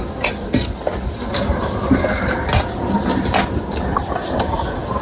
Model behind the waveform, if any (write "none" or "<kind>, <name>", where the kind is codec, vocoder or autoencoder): none